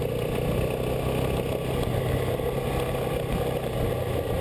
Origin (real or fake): real